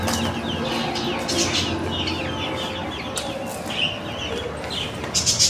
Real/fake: real